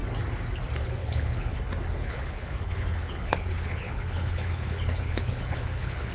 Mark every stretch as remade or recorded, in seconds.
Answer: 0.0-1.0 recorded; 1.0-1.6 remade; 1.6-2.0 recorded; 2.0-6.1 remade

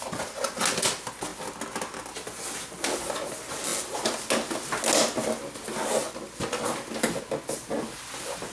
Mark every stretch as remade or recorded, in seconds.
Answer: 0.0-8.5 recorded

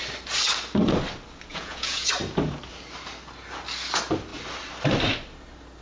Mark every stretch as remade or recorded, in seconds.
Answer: 0.0-1.5 recorded; 1.5-2.1 remade; 2.1-5.8 recorded

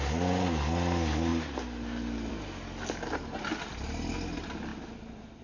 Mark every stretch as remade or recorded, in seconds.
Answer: 0.0-5.4 recorded

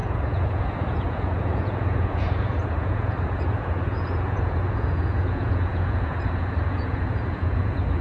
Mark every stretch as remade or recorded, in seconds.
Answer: 0.0-8.0 remade

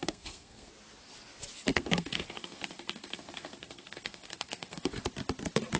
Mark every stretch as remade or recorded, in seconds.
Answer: 0.0-0.7 remade; 0.7-1.7 recorded; 1.7-5.0 remade; 5.0-5.8 recorded

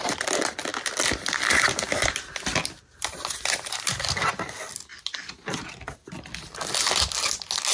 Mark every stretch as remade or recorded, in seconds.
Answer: 0.0-7.7 recorded